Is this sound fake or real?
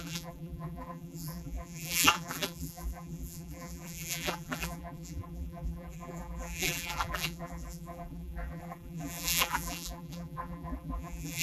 fake